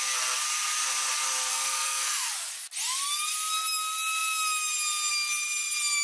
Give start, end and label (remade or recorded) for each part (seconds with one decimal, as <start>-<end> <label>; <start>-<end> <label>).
0.0-1.5 recorded; 1.5-2.3 remade; 2.3-6.0 recorded